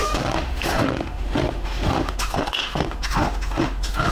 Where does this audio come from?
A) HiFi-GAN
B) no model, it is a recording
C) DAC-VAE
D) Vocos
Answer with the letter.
C